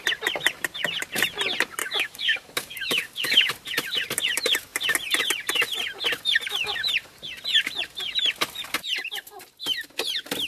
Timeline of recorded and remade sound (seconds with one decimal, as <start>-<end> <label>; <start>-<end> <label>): 0.0-1.8 recorded; 1.8-3.5 remade; 3.5-10.5 recorded